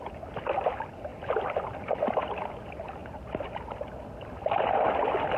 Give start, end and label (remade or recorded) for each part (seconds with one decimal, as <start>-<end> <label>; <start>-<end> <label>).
0.0-1.1 recorded; 1.1-2.5 remade; 2.5-3.0 recorded; 3.0-4.0 remade; 4.0-5.4 recorded